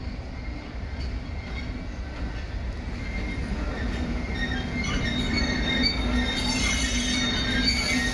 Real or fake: real